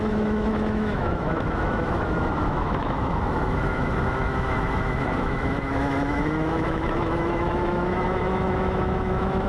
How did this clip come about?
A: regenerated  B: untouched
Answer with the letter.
A